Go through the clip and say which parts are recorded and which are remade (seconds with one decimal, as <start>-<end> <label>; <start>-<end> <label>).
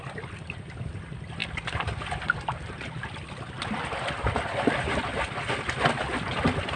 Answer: 0.0-6.8 recorded